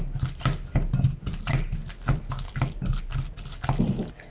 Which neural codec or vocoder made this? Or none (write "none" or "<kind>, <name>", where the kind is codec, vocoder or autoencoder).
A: none